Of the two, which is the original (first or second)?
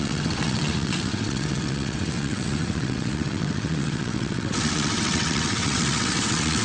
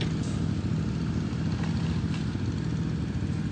second